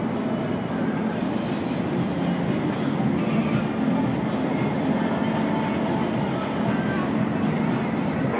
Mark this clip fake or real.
real